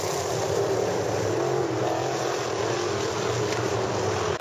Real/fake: real